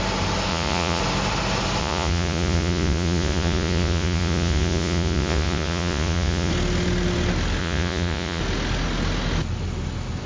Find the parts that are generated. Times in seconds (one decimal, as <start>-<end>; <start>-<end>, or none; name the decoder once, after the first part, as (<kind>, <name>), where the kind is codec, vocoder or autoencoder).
0.5-1.0 (vocoder, Vocos); 1.8-6.5; 7.6-8.4

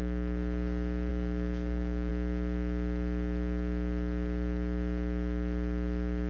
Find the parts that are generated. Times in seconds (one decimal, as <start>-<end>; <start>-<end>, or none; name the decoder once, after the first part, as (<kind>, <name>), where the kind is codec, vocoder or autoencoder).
1.1-2.1 (codec, DAC)

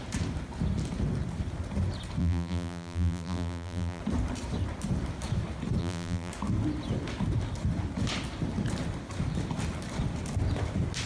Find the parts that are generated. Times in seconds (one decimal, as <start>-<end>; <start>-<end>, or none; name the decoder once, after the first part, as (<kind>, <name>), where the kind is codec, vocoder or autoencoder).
2.2-4.0 (vocoder, BigVGAN v2); 5.8-6.3

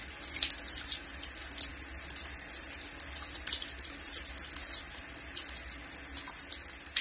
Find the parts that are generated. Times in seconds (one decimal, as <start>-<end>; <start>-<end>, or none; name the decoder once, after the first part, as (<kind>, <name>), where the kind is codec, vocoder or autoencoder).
none

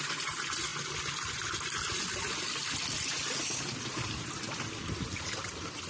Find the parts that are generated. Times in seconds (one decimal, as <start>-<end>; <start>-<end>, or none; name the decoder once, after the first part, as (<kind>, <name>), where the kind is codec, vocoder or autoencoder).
none

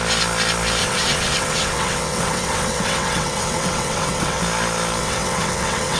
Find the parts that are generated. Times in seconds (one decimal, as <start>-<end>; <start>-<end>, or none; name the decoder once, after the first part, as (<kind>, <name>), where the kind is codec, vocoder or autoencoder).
0.8-4.4 (vocoder, WaveNeXt); 5.0-6.0

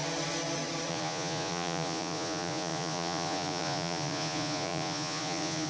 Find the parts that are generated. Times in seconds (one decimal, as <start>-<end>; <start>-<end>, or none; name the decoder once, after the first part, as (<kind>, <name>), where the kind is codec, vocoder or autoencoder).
0.9-5.7 (vocoder, Vocos)